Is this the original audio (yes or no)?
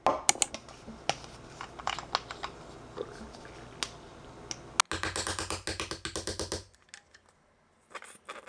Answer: yes